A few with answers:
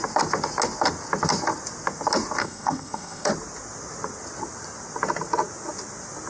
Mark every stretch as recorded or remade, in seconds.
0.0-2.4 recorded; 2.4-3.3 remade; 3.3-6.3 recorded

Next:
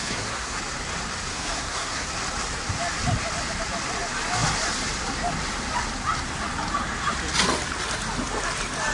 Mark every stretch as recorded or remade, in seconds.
0.0-0.6 remade; 0.6-1.3 recorded; 1.3-2.1 remade; 2.1-8.9 recorded